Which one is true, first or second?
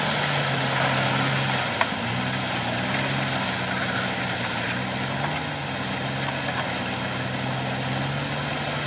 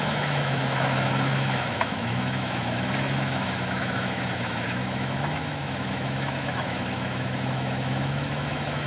first